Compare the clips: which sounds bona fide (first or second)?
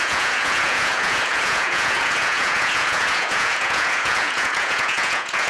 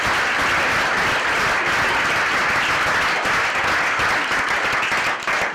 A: second